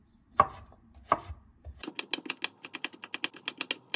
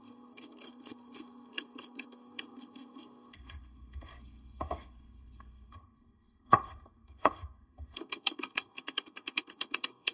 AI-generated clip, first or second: second